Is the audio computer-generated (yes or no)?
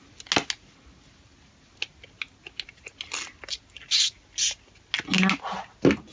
no